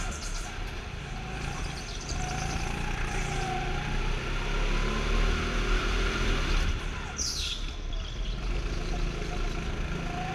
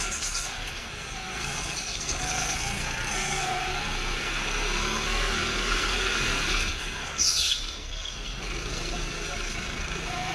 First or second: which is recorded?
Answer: first